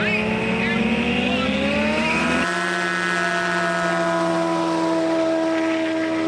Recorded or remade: recorded